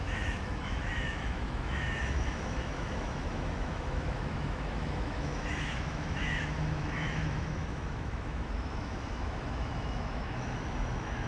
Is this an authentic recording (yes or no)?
no